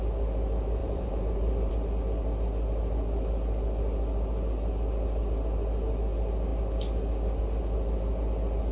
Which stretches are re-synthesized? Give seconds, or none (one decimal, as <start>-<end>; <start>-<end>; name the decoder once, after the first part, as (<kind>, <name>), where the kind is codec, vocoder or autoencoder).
0.8-1.7 (vocoder, BigVGAN v2)